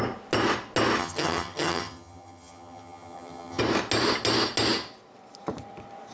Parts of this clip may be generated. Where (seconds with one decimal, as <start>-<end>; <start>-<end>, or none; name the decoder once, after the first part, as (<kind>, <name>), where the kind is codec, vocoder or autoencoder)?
1.0-3.6 (vocoder, HiFi-GAN)